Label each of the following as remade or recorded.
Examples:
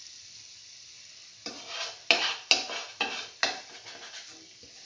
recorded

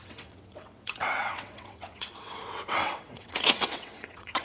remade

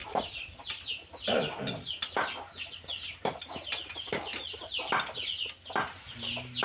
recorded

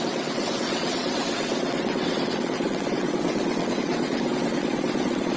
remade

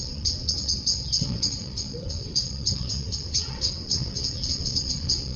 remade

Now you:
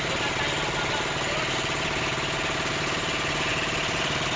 recorded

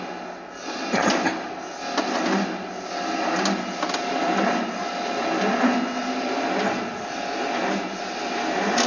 recorded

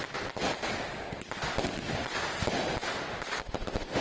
recorded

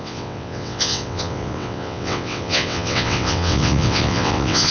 remade